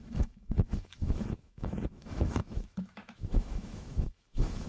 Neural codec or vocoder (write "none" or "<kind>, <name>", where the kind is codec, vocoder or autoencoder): autoencoder, DAC-VAE